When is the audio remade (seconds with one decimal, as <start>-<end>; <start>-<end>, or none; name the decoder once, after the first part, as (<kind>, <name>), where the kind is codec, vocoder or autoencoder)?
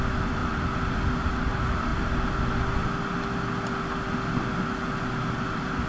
none